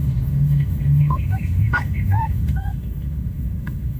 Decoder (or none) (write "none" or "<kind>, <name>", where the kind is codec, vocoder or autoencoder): autoencoder, DAC-VAE